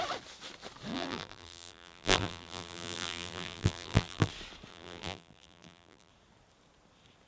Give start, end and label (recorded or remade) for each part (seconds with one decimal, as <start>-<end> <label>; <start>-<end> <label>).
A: 0.0-0.9 recorded; 0.9-4.3 remade; 4.3-4.7 recorded; 4.7-6.1 remade; 6.1-7.3 recorded